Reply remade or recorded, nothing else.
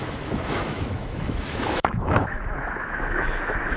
remade